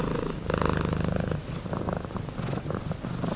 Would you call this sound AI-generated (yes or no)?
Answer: no